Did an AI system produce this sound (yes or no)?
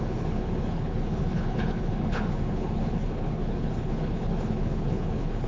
yes